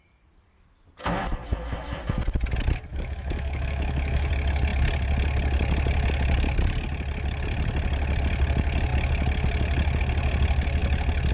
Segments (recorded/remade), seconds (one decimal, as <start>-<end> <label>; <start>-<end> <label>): 0.0-2.9 recorded; 2.9-4.3 remade; 4.3-11.3 recorded

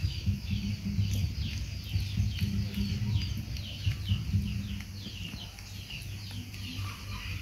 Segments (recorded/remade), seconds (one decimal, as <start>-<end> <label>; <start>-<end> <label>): 0.0-0.7 remade; 0.7-7.4 recorded

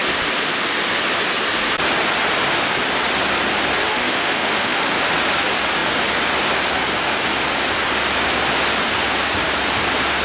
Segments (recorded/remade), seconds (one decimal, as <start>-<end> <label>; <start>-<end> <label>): 0.0-3.9 recorded; 3.9-4.8 remade; 4.8-10.2 recorded

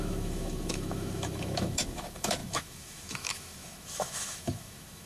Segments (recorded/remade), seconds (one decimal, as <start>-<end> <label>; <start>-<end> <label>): 0.0-5.1 remade

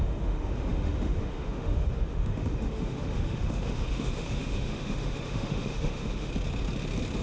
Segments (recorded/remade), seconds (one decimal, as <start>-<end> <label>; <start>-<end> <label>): 0.0-6.3 remade; 6.3-7.2 recorded